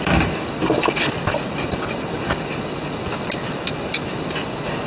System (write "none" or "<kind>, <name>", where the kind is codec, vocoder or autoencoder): none